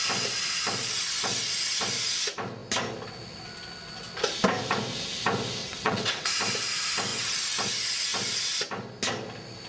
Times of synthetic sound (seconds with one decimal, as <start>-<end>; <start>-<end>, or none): 5.6-6.3